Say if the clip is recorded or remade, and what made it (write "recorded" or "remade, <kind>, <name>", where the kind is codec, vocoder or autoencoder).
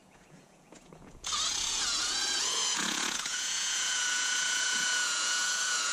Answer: remade, vocoder, Vocos